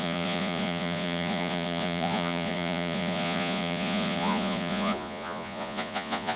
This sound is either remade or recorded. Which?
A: remade